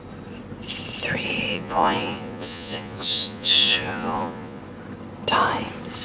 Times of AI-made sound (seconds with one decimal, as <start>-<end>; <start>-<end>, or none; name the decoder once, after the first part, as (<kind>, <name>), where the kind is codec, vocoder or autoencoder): 1.5-4.6 (vocoder, Vocos)